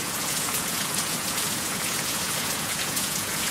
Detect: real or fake fake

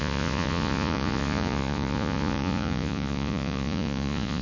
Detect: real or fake fake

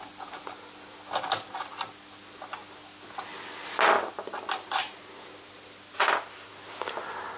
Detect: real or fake real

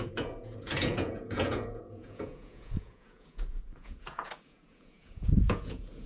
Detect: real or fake fake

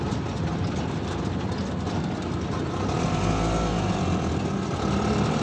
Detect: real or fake real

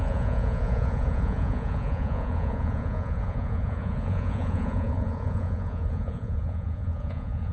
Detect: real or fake fake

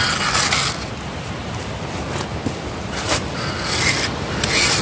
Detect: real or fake real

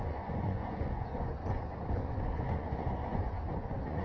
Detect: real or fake fake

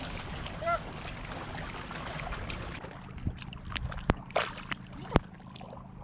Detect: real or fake real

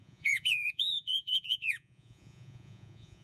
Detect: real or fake fake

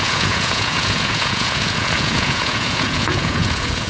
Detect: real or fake fake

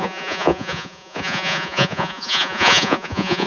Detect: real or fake fake